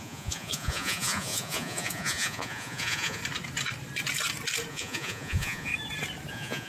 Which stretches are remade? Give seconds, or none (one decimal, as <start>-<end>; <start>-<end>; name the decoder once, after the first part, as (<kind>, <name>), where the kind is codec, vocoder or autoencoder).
0.0-3.2 (vocoder, Vocos); 4.7-5.7; 6.3-6.7